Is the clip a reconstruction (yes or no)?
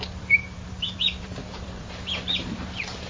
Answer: yes